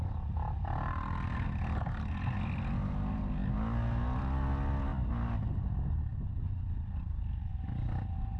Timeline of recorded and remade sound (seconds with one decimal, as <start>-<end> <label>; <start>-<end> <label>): 0.0-8.4 recorded